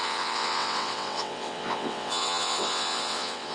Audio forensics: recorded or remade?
remade